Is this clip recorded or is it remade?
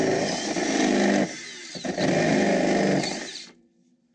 recorded